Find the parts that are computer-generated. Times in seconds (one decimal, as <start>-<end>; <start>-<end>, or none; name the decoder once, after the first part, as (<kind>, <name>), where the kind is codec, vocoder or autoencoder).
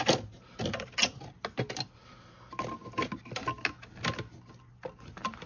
none